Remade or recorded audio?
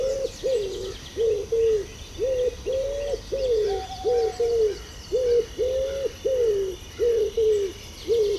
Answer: recorded